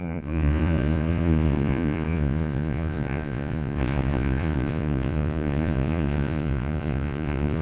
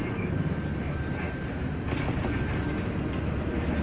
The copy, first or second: first